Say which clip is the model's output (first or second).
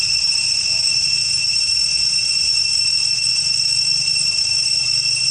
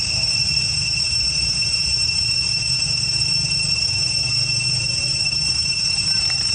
second